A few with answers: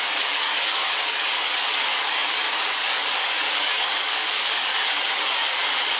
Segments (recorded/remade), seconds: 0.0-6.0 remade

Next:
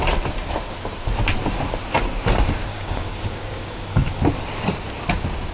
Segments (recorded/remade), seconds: 0.0-2.7 recorded; 2.7-4.2 remade; 4.2-5.5 recorded

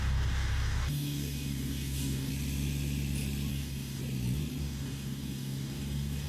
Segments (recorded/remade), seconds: 0.0-2.3 remade; 2.3-3.5 recorded; 3.5-4.0 remade; 4.0-4.6 recorded; 4.6-6.3 remade

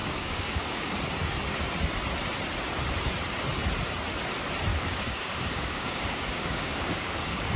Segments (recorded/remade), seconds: 0.0-0.9 remade; 0.9-4.7 recorded; 4.7-7.6 remade

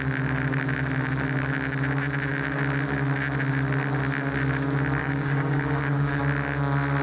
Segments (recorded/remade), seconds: 0.0-5.0 recorded; 5.0-6.2 remade; 6.2-7.0 recorded

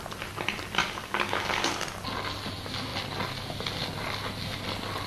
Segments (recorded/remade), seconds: 0.0-0.8 recorded; 0.8-1.7 remade; 1.7-5.1 recorded

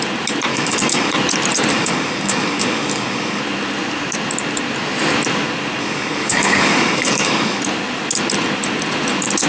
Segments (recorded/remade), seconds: 0.0-0.5 recorded; 0.5-1.1 remade; 1.1-1.7 recorded; 1.7-3.4 remade; 3.4-5.8 recorded; 5.8-7.6 remade; 7.6-9.5 recorded

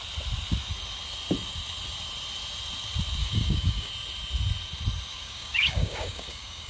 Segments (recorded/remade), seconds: 0.0-3.2 recorded; 3.2-3.9 remade; 3.9-5.1 recorded; 5.1-6.7 remade